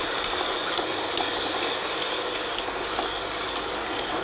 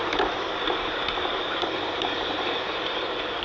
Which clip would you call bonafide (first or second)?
first